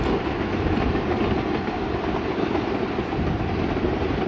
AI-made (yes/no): no